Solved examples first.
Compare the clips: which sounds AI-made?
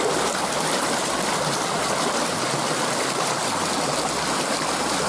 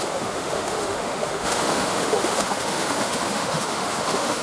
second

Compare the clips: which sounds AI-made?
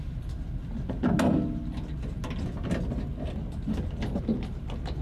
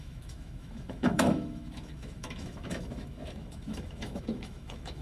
second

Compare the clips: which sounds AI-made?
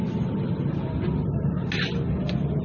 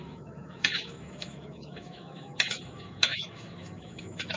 second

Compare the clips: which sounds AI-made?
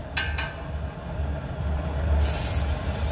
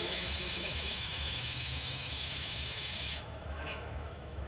second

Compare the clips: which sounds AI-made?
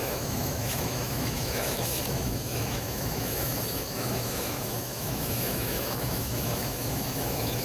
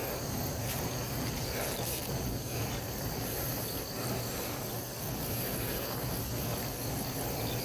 first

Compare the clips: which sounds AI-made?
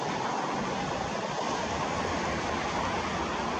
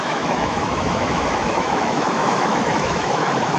second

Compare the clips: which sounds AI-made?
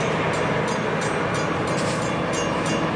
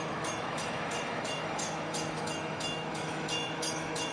second